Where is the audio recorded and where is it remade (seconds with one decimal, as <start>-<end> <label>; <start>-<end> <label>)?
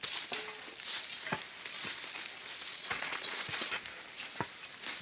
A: 0.0-2.7 recorded; 2.7-3.7 remade; 3.7-5.0 recorded